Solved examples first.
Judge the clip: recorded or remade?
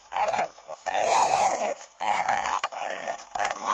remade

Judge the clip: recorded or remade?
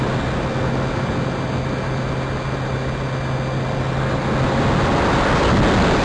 recorded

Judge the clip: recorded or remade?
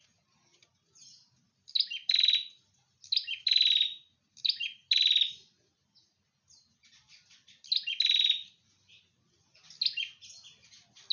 recorded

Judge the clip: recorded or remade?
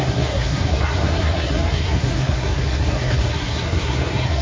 remade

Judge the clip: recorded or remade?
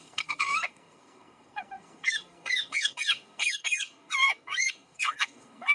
remade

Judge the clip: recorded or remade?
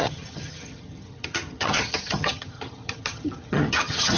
remade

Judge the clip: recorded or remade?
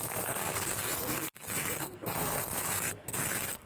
remade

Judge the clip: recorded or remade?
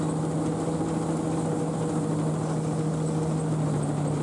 recorded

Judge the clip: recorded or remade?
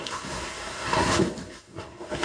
remade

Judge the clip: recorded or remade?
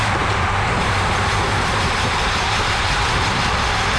remade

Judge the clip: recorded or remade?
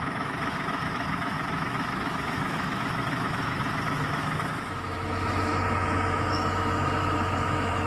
remade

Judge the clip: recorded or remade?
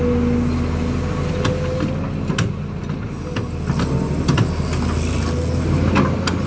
recorded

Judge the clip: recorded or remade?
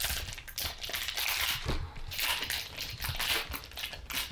recorded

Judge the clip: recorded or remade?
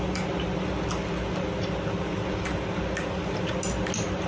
recorded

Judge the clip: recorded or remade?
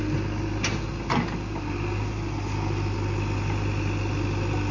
recorded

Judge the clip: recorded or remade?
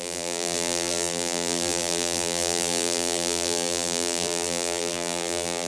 remade